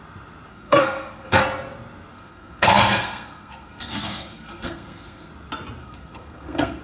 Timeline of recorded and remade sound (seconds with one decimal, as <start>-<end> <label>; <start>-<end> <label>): 0.0-0.5 recorded; 0.5-1.4 remade; 1.4-2.1 recorded; 2.1-5.3 remade; 5.3-5.8 recorded; 5.8-6.8 remade

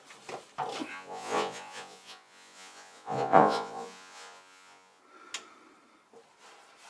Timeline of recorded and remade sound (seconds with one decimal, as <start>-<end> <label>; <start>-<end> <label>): 0.0-0.9 recorded; 0.9-5.0 remade; 5.0-6.9 recorded

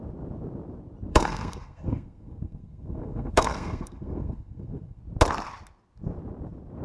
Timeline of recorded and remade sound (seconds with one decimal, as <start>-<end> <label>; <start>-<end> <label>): 0.0-1.1 recorded; 1.1-5.0 remade; 5.0-6.8 recorded

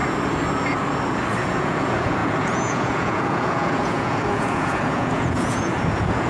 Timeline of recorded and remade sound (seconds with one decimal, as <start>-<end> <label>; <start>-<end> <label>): 0.0-1.4 recorded; 1.4-6.3 remade

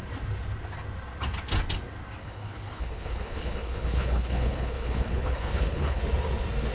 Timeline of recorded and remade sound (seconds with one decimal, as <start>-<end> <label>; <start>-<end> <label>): 0.0-2.2 recorded; 2.2-6.0 remade; 6.0-6.7 recorded

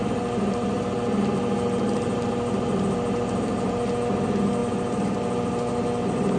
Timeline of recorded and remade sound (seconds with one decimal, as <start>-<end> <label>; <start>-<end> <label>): 0.0-6.4 recorded

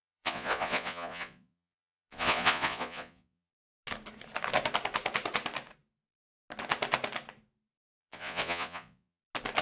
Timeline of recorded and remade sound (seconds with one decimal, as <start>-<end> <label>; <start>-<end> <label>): 0.0-3.5 remade; 3.5-8.0 recorded; 8.0-9.2 remade; 9.2-9.6 recorded

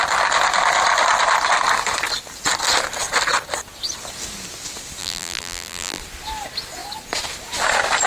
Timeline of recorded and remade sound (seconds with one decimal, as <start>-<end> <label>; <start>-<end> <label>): 0.0-5.0 recorded; 5.0-6.0 remade; 6.0-8.1 recorded